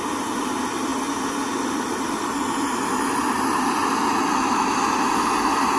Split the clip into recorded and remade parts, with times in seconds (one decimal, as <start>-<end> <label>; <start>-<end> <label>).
0.0-5.8 recorded